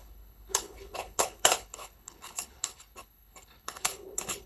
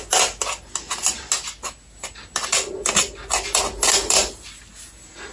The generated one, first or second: first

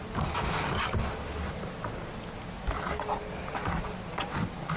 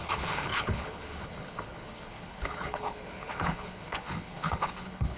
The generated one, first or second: second